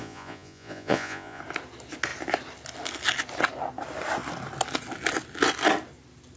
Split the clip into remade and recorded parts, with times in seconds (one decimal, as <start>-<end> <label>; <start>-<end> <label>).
0.0-1.4 remade; 1.4-6.4 recorded